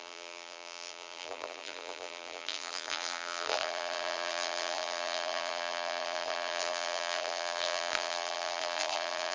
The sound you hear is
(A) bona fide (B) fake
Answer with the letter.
B